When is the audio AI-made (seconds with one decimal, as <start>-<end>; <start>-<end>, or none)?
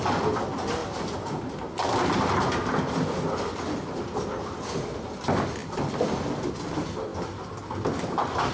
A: 0.8-1.6; 5.6-6.1